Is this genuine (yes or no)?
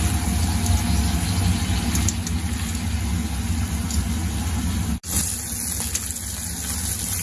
yes